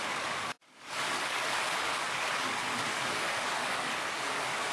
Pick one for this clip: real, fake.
fake